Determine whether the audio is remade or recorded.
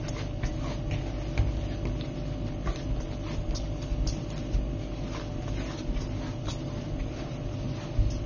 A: recorded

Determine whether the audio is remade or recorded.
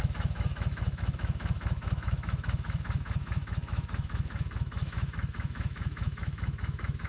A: remade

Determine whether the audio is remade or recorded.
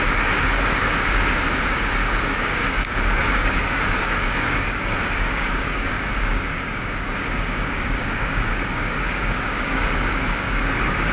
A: remade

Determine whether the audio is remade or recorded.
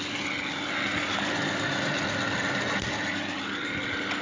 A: recorded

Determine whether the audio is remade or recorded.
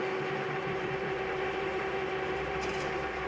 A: remade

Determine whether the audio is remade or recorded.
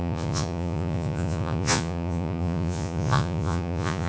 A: remade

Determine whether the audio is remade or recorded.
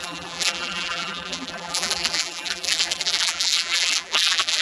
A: remade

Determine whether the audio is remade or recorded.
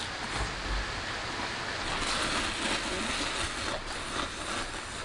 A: recorded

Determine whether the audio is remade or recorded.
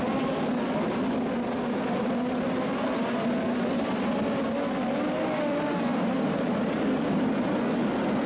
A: recorded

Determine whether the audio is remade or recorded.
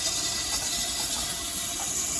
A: recorded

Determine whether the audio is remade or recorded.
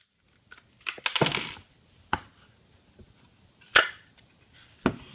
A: recorded